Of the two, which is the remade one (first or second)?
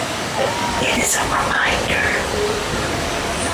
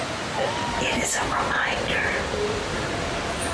first